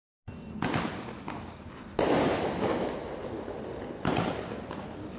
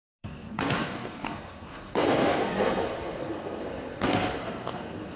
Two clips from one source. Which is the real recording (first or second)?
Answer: first